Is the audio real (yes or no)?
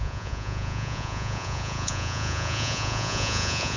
no